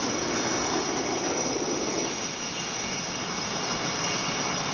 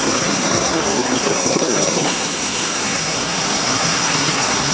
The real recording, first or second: first